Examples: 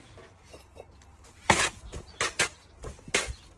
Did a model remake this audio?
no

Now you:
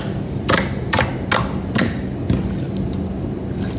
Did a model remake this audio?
no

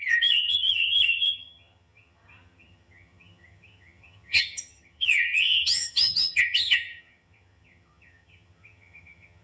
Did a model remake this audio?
yes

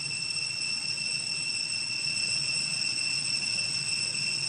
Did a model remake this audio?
yes